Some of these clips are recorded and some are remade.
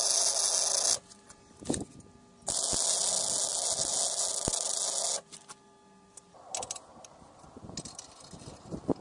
recorded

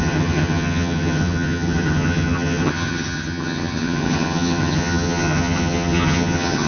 remade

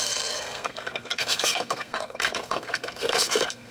remade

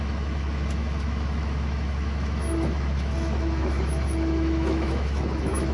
remade